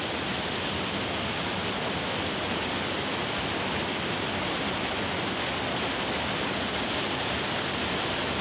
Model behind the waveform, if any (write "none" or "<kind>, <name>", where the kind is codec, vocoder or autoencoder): none